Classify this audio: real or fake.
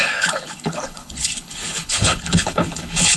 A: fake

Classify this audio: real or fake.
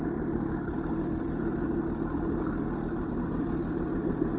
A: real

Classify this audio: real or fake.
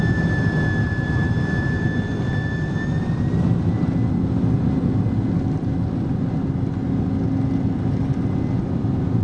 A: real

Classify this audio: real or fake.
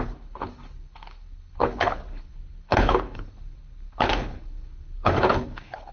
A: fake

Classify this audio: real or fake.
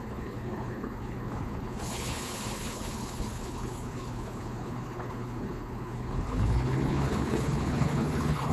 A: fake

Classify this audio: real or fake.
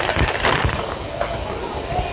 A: real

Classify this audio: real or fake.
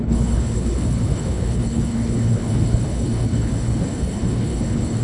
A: fake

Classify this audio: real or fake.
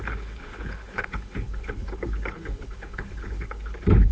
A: fake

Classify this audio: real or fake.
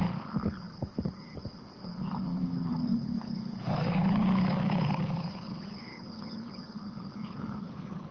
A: fake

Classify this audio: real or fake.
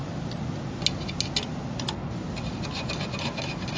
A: real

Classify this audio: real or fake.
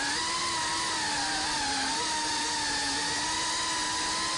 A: real